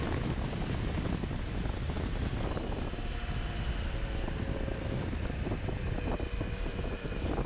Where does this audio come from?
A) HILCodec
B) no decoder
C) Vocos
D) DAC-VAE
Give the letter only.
B